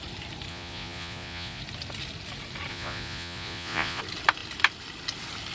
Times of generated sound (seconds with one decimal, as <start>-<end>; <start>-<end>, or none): 0.5-1.6; 2.7-4.0

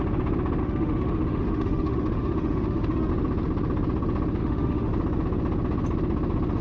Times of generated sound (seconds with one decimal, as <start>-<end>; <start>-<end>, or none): 0.6-3.1; 4.4-4.9

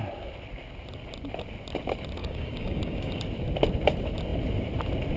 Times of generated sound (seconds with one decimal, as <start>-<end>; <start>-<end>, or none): 2.2-3.2

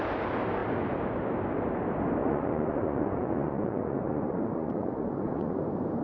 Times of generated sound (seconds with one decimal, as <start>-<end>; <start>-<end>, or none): 2.2-5.6

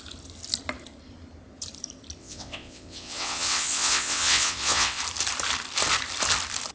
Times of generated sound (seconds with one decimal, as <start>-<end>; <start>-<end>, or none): 2.2-5.0